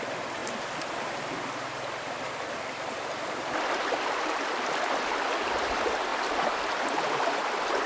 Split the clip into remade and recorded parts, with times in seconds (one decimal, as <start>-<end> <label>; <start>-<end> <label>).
0.0-7.9 recorded